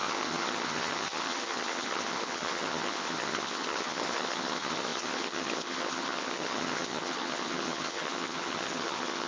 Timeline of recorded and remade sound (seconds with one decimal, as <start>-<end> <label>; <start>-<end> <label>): 0.0-9.3 remade

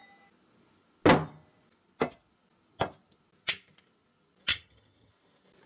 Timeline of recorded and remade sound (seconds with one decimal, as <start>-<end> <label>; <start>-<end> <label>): 0.0-4.5 recorded; 4.5-5.1 remade; 5.1-5.7 recorded

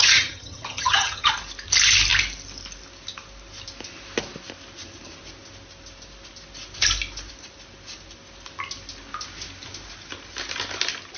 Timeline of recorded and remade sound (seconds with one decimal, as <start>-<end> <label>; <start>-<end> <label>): 0.0-1.3 remade; 1.3-11.2 recorded

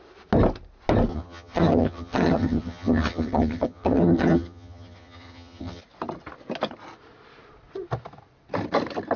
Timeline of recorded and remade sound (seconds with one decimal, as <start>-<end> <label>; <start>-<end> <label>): 0.0-1.1 recorded; 1.1-5.8 remade; 5.8-9.2 recorded

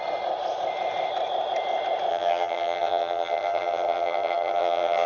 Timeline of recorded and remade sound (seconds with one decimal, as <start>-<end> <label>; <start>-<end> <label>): 0.0-2.1 recorded; 2.1-5.1 remade

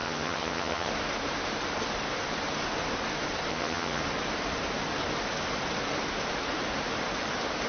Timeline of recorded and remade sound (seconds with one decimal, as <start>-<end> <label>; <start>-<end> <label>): 0.0-0.9 remade; 0.9-3.5 recorded; 3.5-4.0 remade; 4.0-7.7 recorded